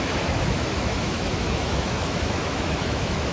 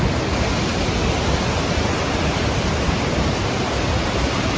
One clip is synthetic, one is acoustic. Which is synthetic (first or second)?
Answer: first